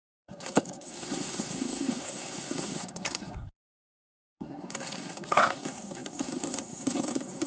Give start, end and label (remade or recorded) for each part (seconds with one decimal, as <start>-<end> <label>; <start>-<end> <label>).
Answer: 0.0-7.5 remade